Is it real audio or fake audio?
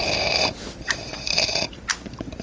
real